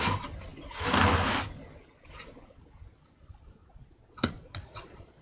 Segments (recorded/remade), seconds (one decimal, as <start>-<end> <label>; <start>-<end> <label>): 0.0-3.6 recorded; 3.6-5.2 remade